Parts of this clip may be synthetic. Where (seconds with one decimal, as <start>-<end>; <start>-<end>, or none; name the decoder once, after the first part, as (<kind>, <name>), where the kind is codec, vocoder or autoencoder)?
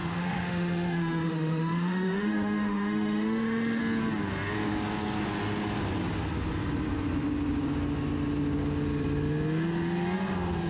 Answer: 0.0-3.8 (autoencoder, DAC-VAE)